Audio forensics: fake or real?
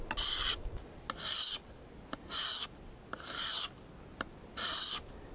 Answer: real